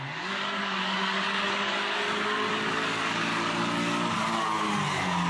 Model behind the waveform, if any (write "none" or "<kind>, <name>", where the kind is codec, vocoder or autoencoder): codec, DAC